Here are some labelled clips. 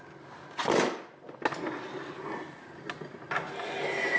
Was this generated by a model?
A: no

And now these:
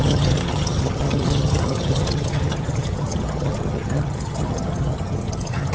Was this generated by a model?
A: yes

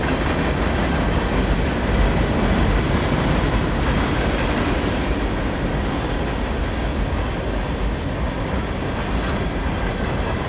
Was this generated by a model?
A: no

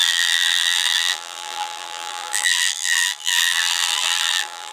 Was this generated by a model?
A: yes